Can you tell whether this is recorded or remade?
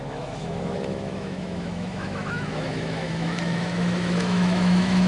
remade